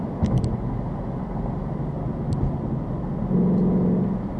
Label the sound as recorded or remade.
recorded